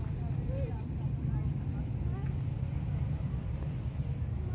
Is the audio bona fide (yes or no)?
yes